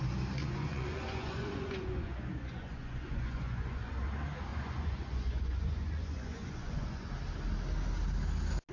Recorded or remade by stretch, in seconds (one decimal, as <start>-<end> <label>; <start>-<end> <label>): 0.0-0.4 recorded; 0.4-3.9 remade; 3.9-4.5 recorded; 4.5-7.1 remade; 7.1-8.7 recorded